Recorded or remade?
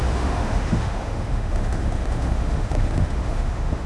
remade